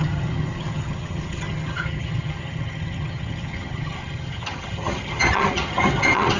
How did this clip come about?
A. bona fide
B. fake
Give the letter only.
B